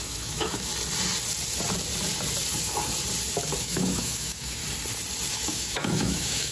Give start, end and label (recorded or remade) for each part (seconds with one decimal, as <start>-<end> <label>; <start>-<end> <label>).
0.0-0.7 remade; 0.7-3.6 recorded; 3.6-4.6 remade; 4.6-5.3 recorded; 5.3-6.5 remade